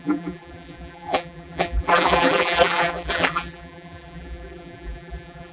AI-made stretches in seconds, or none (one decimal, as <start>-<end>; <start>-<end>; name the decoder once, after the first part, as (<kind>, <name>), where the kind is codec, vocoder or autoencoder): 0.0-5.5 (vocoder, BigVGAN v2)